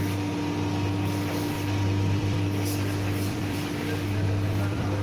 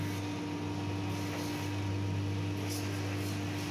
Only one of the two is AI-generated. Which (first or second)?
first